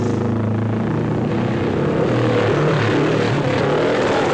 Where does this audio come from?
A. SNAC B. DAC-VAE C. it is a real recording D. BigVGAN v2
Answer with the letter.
C